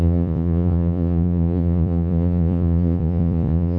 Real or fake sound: fake